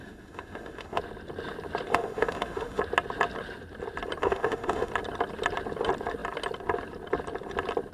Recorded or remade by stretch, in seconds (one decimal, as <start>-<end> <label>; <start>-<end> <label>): 0.0-1.0 remade; 1.0-1.9 recorded; 1.9-2.8 remade; 2.8-4.2 recorded; 4.2-4.9 remade; 4.9-7.9 recorded